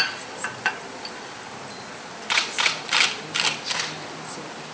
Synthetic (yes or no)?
no